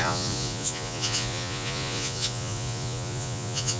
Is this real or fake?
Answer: fake